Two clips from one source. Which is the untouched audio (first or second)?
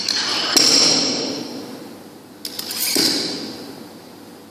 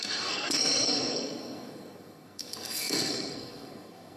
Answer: first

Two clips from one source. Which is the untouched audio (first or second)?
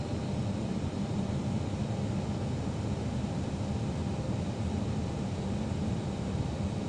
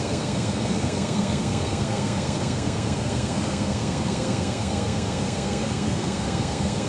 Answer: first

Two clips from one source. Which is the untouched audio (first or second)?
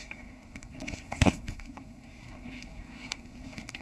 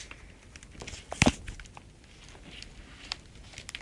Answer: second